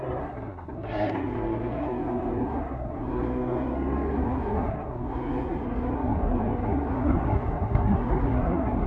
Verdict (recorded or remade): remade